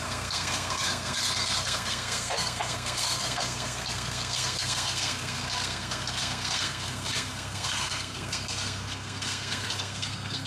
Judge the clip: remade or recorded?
remade